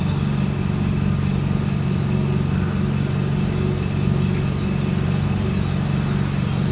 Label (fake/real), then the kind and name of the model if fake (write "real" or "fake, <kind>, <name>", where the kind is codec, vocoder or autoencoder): real